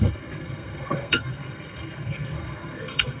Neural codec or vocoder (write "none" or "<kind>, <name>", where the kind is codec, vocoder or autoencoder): codec, SNAC